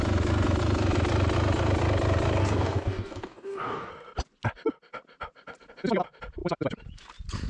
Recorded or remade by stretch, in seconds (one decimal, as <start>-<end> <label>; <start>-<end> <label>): 0.0-2.4 recorded; 2.4-3.9 remade; 3.9-7.5 recorded